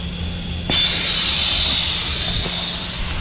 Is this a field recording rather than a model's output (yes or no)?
yes